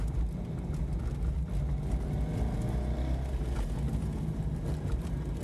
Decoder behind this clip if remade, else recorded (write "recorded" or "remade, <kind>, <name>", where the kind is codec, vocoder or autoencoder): recorded